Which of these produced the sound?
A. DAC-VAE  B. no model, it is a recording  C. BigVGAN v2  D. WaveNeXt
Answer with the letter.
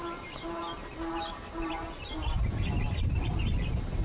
C